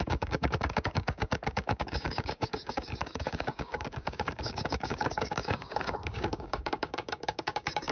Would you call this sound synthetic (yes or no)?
yes